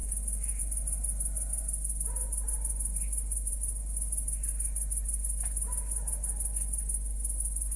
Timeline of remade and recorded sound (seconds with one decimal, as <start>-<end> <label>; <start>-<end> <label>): 0.0-0.6 remade; 0.6-7.8 recorded

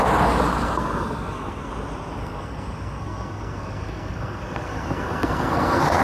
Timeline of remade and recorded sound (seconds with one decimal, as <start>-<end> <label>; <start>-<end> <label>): 0.0-0.5 recorded; 0.5-1.7 remade; 1.7-2.2 recorded; 2.2-6.0 remade

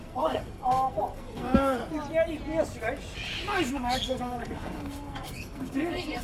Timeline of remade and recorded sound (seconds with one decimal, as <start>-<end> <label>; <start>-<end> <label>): 0.0-1.8 remade; 1.8-3.7 recorded; 3.7-6.2 remade

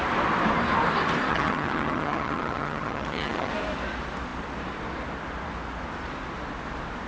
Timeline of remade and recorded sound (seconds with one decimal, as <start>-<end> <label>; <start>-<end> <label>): 0.0-1.3 recorded; 1.3-3.5 remade; 3.5-7.1 recorded

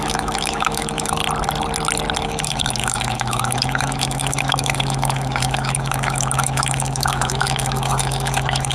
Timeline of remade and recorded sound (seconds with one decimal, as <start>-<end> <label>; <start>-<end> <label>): 0.0-1.2 remade; 1.2-2.2 recorded; 2.2-8.7 remade